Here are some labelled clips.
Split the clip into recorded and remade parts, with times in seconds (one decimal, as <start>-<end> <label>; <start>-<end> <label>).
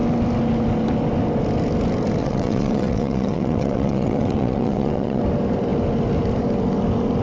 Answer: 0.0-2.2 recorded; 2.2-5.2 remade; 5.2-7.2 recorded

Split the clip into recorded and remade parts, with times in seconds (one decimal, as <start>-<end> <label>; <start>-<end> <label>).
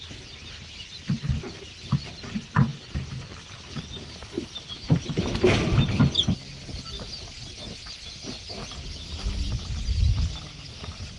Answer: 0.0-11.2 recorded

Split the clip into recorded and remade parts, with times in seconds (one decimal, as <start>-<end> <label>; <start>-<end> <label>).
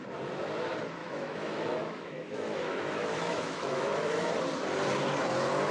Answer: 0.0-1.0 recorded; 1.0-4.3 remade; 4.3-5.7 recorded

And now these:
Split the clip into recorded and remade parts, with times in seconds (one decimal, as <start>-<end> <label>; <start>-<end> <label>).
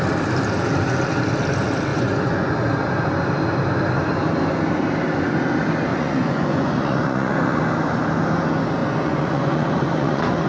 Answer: 0.0-1.9 recorded; 1.9-2.5 remade; 2.5-5.9 recorded; 5.9-7.6 remade; 7.6-8.8 recorded; 8.8-10.5 remade